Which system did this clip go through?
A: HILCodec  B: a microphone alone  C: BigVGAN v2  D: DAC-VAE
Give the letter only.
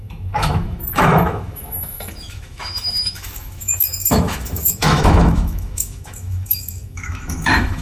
D